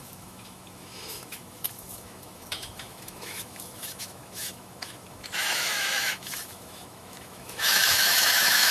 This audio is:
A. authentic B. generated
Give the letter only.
B